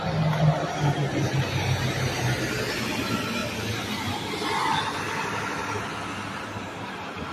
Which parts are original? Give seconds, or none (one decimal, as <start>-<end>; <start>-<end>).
0.0-7.3